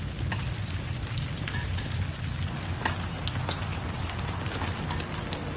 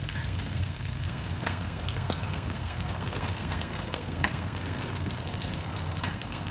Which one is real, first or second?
first